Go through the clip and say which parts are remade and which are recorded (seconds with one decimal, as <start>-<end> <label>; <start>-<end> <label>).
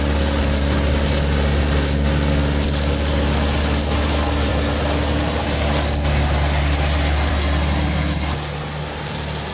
0.0-9.5 recorded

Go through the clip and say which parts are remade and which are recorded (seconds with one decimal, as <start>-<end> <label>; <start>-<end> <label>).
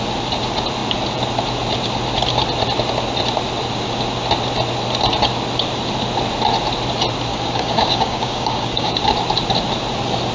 0.0-7.3 recorded; 7.3-9.0 remade; 9.0-10.3 recorded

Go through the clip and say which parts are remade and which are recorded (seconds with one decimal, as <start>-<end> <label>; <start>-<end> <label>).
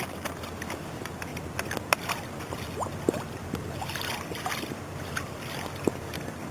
0.0-6.5 recorded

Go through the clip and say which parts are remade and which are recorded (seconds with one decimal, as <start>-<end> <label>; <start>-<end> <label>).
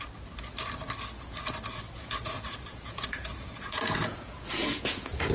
0.0-2.0 recorded; 2.0-5.3 remade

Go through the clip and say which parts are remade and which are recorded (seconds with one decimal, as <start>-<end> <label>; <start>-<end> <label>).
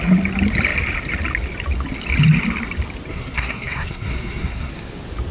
0.0-3.1 recorded; 3.1-4.7 remade; 4.7-5.3 recorded